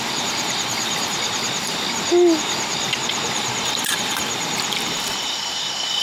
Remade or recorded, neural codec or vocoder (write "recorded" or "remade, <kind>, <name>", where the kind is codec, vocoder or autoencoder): recorded